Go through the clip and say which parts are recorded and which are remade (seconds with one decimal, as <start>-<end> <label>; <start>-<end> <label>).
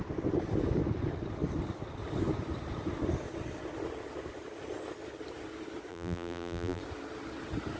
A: 0.0-5.9 recorded; 5.9-6.8 remade; 6.8-7.8 recorded